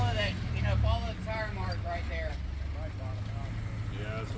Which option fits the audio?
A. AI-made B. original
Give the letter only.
B